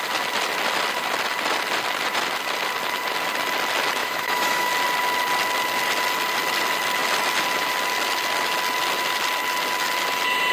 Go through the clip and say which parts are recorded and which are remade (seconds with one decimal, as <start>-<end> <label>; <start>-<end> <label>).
0.0-4.0 recorded; 4.0-4.7 remade; 4.7-10.5 recorded